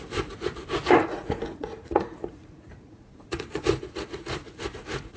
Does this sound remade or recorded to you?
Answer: remade